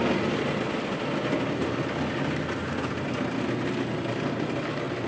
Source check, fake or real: real